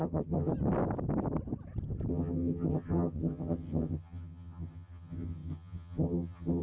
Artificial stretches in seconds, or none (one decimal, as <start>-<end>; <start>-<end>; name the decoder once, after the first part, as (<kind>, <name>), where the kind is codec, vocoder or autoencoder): 0.0-0.5 (vocoder, HiFi-GAN); 2.1-6.6